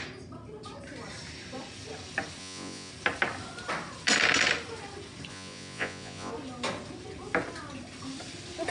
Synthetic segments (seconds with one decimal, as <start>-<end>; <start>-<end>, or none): 2.4-2.9; 5.3-6.3